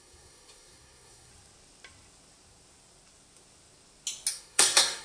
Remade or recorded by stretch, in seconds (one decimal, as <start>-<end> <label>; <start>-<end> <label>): 0.0-1.3 remade; 1.3-4.3 recorded; 4.3-5.0 remade